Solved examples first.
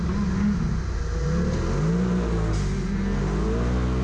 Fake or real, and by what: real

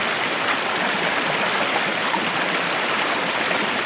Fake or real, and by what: real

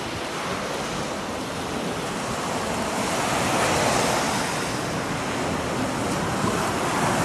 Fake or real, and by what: real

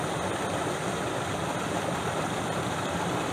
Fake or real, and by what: real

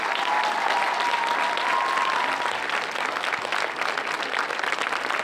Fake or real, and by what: real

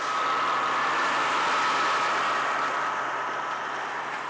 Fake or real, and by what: real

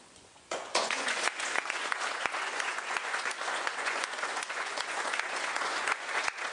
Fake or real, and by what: fake, vocoder, Vocos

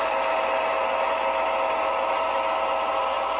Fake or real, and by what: real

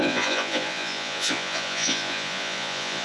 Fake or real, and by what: fake, vocoder, Vocos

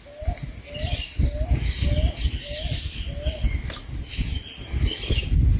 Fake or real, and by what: real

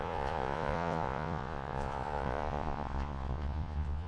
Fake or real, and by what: fake, vocoder, Vocos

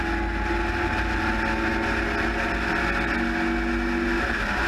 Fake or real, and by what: real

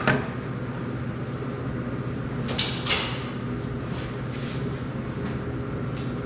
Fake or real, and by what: real